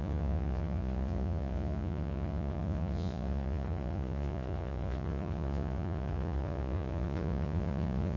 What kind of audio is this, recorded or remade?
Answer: remade